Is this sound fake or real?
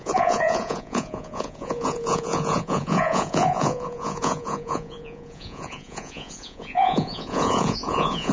fake